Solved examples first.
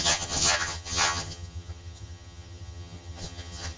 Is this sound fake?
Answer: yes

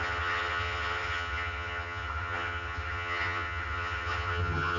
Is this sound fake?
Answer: yes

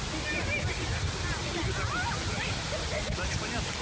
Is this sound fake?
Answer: no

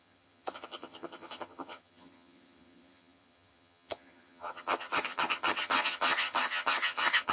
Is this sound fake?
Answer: yes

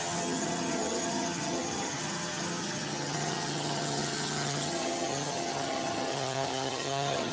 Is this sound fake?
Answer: yes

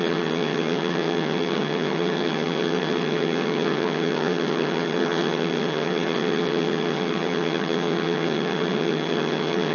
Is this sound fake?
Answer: yes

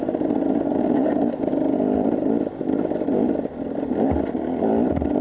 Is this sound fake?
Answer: no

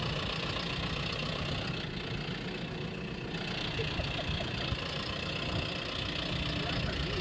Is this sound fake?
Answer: no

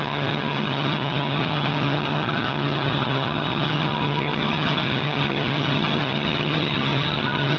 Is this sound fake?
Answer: yes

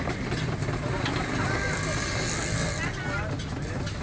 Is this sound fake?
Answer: no